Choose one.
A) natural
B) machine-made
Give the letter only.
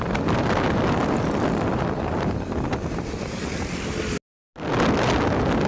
A